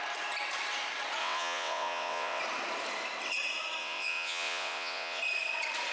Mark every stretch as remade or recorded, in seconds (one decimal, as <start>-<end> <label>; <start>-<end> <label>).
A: 0.0-1.2 recorded; 1.2-2.4 remade; 2.4-3.8 recorded; 3.8-5.2 remade; 5.2-5.9 recorded